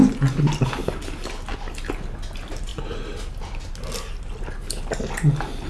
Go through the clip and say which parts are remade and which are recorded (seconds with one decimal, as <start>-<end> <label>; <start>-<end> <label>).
0.0-5.7 recorded